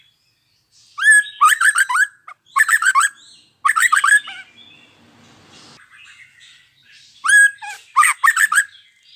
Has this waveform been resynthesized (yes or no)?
no